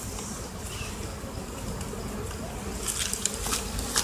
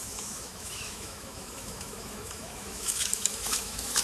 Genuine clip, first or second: first